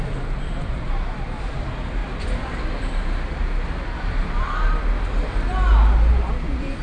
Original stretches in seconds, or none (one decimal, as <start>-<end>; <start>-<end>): 2.0-6.1